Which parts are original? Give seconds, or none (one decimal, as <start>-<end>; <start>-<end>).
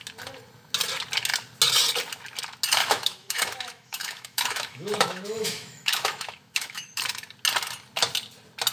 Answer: 0.0-2.8; 7.0-8.7